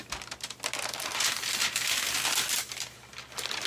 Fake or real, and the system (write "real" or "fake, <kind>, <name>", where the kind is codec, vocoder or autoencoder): real